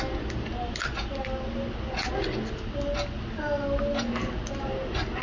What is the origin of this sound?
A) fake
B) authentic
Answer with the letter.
B